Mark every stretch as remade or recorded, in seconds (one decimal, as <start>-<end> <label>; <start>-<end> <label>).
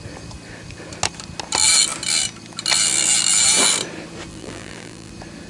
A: 0.0-4.3 recorded; 4.3-5.1 remade; 5.1-5.5 recorded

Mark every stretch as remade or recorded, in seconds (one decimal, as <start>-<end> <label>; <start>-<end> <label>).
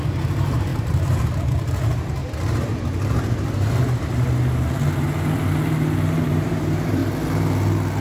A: 0.0-2.2 remade; 2.2-6.2 recorded; 6.2-7.0 remade; 7.0-8.0 recorded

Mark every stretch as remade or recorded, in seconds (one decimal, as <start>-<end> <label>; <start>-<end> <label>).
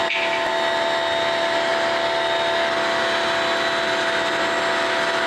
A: 0.0-0.5 remade; 0.5-5.3 recorded